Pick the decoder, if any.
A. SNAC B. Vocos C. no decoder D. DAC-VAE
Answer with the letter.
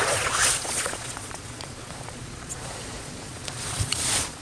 B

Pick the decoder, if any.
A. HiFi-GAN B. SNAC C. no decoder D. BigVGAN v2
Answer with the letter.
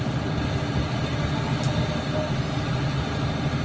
C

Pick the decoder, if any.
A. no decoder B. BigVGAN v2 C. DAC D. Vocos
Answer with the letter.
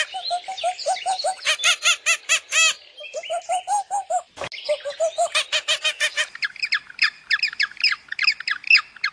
A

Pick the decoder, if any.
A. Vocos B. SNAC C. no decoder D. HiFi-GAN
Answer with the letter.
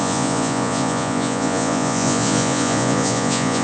A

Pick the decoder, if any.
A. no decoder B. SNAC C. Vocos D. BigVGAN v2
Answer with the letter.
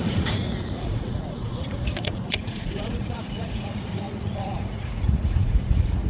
C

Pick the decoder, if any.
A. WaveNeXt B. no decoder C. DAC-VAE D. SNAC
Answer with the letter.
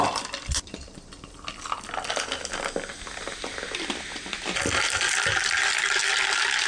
B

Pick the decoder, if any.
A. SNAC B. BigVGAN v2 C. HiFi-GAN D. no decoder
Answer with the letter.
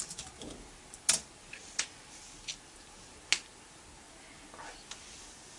D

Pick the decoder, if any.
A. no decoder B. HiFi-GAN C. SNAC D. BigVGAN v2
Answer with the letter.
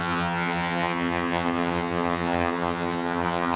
B